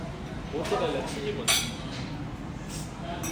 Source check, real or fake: real